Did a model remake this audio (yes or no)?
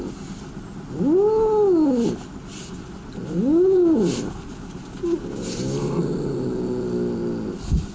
no